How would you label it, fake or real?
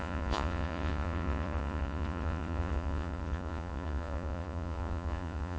fake